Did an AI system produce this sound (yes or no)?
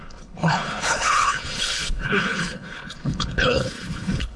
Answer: yes